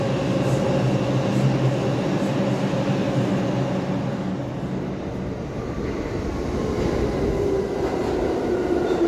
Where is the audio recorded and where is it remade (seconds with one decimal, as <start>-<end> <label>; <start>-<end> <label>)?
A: 0.0-8.0 recorded; 8.0-9.1 remade